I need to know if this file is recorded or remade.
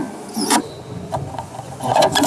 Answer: remade